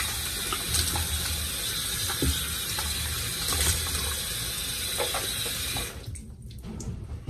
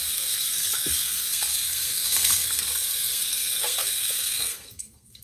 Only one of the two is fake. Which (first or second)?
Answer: second